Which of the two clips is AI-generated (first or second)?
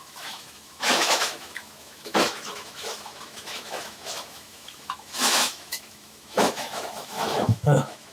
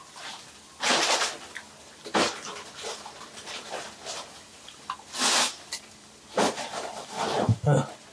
first